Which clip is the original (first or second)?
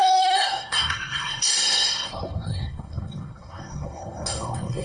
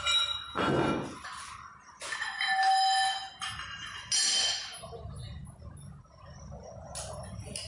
second